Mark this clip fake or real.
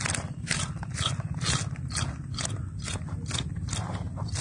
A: real